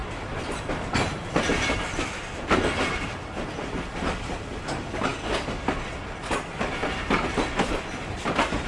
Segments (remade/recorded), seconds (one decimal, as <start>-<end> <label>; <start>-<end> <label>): 0.0-2.3 remade; 2.3-8.7 recorded